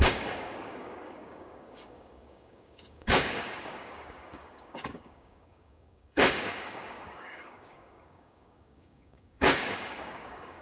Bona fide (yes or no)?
no